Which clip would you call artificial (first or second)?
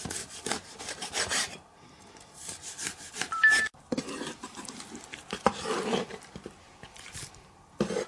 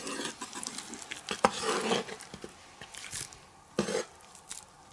first